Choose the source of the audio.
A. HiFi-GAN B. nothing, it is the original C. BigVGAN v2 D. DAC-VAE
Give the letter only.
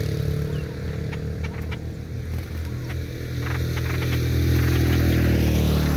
B